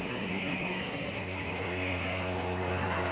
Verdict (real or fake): fake